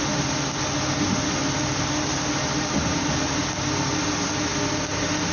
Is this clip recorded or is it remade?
recorded